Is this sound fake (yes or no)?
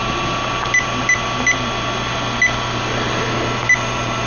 no